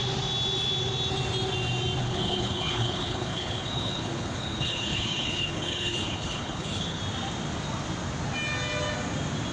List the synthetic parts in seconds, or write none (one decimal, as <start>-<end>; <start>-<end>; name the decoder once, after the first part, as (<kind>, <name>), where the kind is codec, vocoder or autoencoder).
2.0-7.0 (codec, HILCodec)